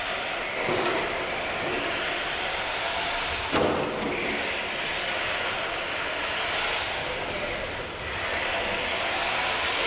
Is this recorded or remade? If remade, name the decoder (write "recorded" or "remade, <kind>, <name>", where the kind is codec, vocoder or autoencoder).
recorded